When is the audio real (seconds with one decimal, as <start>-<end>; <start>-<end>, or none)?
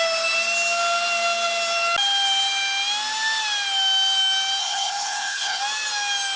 0.0-4.6; 5.6-6.4